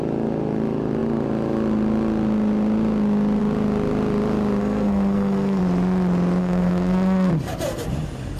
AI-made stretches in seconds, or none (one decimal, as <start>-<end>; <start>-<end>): 4.6-5.6; 6.4-7.3

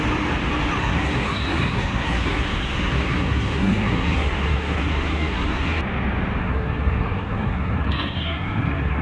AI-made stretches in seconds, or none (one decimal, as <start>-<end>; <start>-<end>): 0.8-5.8; 6.4-9.0

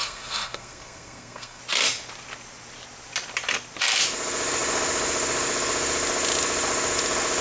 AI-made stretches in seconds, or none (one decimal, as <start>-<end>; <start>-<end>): 0.0-1.6

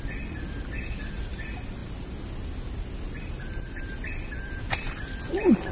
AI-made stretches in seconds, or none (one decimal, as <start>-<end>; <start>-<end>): none

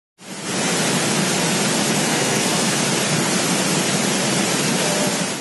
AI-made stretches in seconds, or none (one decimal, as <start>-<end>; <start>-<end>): 2.1-2.8